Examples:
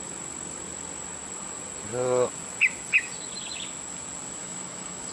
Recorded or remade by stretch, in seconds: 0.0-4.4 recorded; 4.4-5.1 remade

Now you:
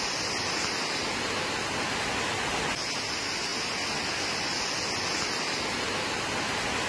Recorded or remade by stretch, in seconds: 0.0-6.9 recorded

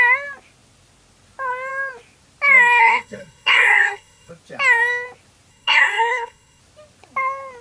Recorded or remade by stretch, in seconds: 0.0-2.8 recorded; 2.8-4.3 remade; 4.3-5.5 recorded; 5.5-6.6 remade; 6.6-7.6 recorded

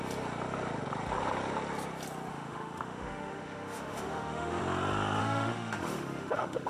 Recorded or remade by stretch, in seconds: 0.0-2.3 recorded; 2.3-4.6 remade; 4.6-5.2 recorded; 5.2-6.7 remade

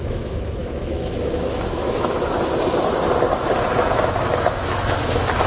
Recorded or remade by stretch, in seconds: 0.0-2.5 remade; 2.5-3.8 recorded; 3.8-5.5 remade

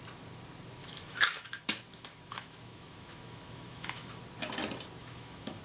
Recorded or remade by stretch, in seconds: 0.0-0.8 recorded; 0.8-4.2 remade; 4.2-5.0 recorded; 5.0-5.6 remade